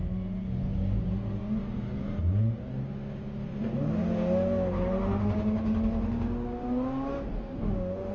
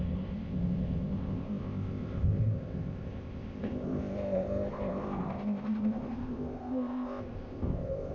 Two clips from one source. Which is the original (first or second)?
first